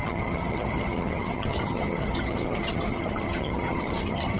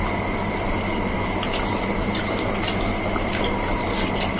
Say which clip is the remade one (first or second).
first